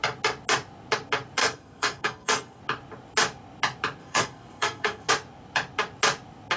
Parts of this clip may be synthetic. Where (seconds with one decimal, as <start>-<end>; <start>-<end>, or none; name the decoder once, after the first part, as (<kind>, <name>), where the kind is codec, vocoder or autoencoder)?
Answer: 1.4-2.6 (codec, SNAC); 4.0-5.1

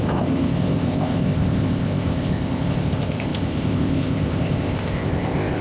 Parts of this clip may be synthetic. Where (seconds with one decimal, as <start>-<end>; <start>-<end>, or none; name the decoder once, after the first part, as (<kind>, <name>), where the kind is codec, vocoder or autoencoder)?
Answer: 0.0-5.6 (codec, ZipCodec)